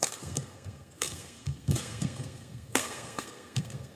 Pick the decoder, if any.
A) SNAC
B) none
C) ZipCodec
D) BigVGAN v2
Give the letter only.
A